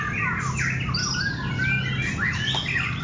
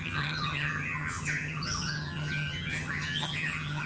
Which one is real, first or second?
first